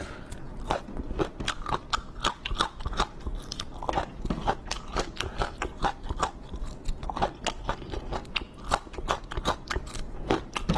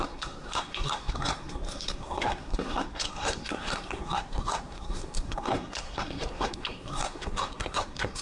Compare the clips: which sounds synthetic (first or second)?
second